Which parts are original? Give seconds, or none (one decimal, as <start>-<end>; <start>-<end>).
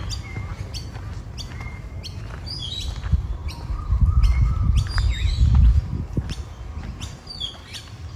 0.0-8.2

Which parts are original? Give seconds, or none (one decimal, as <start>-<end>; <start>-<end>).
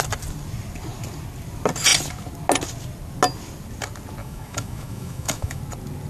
0.0-4.2; 5.6-6.1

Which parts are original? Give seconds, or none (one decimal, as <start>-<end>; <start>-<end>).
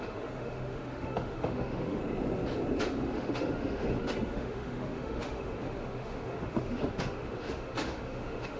2.0-2.9